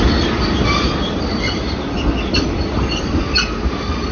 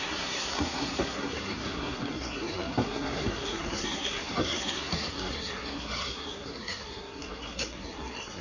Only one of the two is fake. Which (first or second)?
second